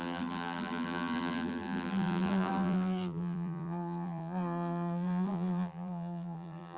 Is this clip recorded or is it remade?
remade